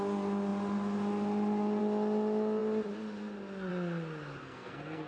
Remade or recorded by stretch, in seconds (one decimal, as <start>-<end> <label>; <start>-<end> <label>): 0.0-4.4 recorded; 4.4-5.1 remade